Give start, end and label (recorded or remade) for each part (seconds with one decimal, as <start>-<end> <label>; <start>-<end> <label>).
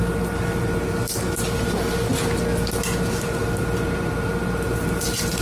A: 0.0-5.4 recorded